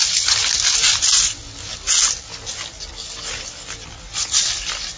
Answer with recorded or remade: recorded